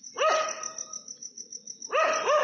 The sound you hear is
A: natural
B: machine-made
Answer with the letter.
A